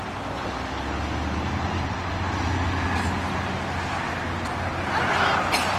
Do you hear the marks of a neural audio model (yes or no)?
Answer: no